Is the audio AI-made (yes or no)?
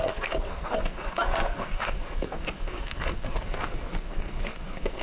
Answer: yes